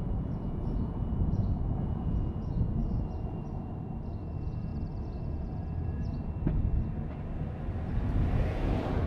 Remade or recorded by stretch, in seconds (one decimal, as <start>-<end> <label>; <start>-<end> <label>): 0.0-2.8 remade; 2.8-4.2 recorded; 4.2-4.7 remade; 4.7-5.2 recorded; 5.2-6.1 remade; 6.1-8.5 recorded; 8.5-9.1 remade